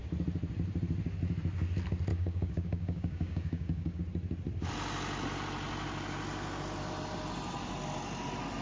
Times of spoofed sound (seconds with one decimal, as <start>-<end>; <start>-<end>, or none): 2.1-4.0